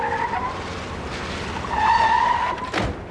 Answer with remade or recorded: recorded